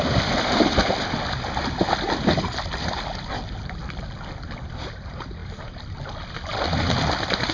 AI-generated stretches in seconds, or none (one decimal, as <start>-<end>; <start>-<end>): 5.4-6.0